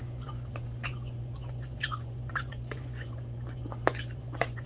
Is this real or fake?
fake